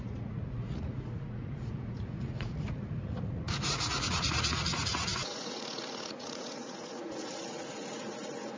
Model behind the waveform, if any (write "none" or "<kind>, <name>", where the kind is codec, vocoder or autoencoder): vocoder, Vocos